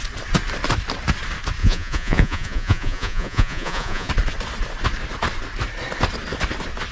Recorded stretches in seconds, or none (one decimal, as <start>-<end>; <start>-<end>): 0.0-1.6; 4.1-6.9